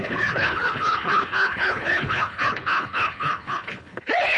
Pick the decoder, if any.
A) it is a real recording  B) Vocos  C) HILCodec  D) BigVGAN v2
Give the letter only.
C